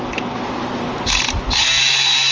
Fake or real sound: real